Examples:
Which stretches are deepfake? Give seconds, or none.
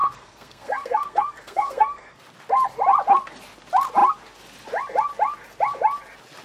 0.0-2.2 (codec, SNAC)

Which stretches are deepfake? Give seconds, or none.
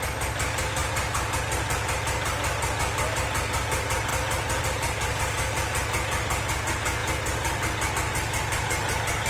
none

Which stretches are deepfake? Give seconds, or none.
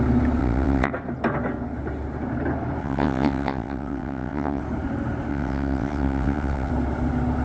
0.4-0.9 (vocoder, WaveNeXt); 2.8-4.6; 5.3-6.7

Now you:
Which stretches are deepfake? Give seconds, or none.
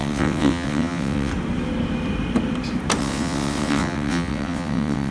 0.0-1.3 (vocoder, WaveNeXt); 3.0-5.1